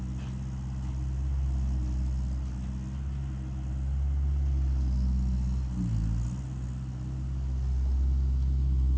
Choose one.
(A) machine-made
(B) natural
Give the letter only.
B